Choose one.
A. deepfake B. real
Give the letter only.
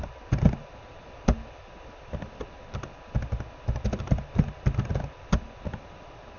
B